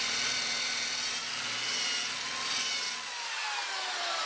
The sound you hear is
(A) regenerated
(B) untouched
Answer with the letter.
B